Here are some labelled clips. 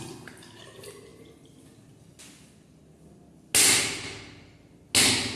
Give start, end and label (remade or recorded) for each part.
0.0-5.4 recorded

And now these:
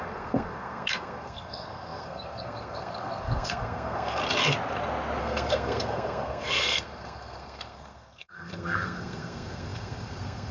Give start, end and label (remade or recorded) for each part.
0.0-4.2 remade; 4.2-5.2 recorded; 5.2-10.5 remade

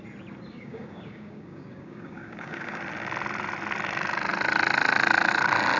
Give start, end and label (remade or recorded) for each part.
0.0-0.5 recorded; 0.5-2.8 remade; 2.8-5.8 recorded

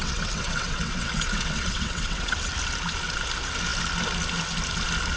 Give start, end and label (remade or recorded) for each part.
0.0-2.5 remade; 2.5-5.2 recorded

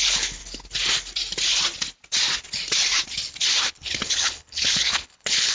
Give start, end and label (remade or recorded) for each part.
0.0-0.4 remade; 0.4-3.7 recorded; 3.7-5.5 remade

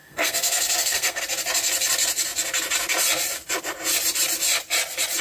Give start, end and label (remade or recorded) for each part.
0.0-1.2 remade; 1.2-5.2 recorded

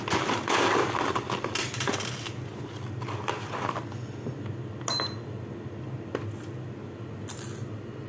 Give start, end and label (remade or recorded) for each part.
0.0-8.1 recorded